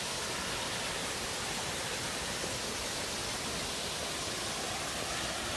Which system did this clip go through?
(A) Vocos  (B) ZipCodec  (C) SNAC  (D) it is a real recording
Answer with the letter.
D